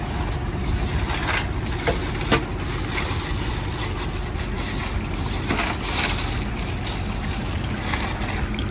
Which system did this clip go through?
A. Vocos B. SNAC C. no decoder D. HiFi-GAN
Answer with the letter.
C